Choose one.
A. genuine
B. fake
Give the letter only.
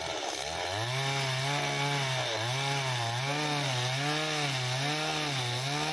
A